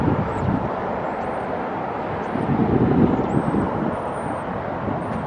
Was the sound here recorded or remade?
recorded